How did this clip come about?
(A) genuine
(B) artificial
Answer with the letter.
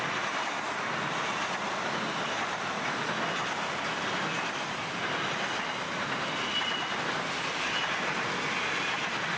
A